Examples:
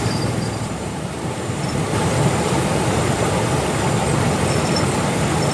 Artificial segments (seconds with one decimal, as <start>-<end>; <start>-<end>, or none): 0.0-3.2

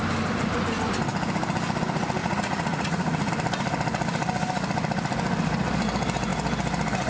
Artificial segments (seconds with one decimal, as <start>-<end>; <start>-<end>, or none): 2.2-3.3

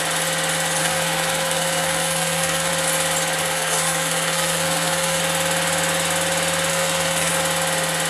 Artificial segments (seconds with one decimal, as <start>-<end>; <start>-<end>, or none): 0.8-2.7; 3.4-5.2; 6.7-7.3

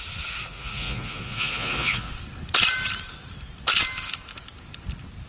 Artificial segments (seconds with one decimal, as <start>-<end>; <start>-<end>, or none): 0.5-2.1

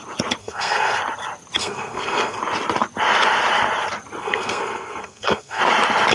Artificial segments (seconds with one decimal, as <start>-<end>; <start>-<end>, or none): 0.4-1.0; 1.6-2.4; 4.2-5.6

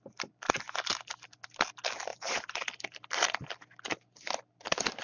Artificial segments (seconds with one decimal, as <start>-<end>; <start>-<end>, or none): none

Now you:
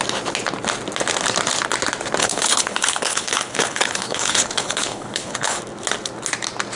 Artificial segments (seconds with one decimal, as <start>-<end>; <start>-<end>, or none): 2.2-5.6